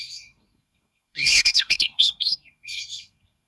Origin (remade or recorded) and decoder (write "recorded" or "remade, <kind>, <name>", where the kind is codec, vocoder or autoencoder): remade, codec, SNAC